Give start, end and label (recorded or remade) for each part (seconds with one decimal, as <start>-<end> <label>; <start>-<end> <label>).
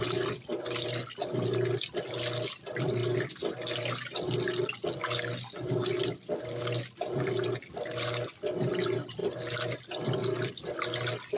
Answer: 0.0-11.4 recorded